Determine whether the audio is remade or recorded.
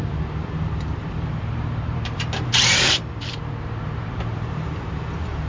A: remade